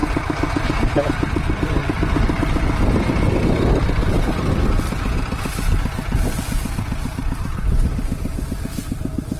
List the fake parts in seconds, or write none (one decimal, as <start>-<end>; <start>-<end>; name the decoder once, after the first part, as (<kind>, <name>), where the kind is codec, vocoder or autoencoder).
none